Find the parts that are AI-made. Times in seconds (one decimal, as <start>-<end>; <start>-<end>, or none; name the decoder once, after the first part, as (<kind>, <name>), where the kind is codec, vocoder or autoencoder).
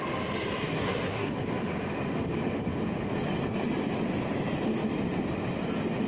0.6-1.4 (codec, SNAC)